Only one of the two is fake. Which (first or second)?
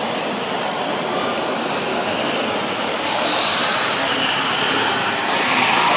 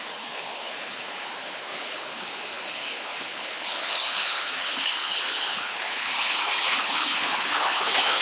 second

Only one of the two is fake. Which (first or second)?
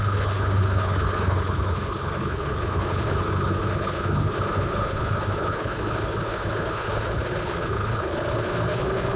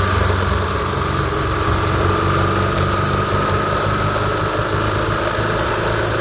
first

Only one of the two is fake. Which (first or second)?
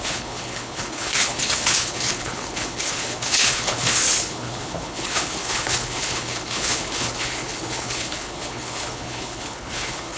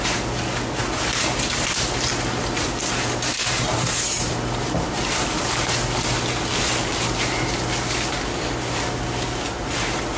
first